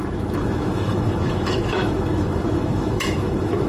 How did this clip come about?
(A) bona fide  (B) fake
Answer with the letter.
B